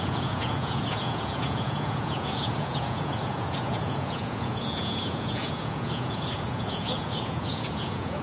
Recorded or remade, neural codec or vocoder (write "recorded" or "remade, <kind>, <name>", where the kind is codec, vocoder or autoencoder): remade, vocoder, Vocos